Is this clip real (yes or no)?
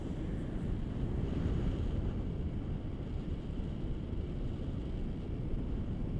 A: yes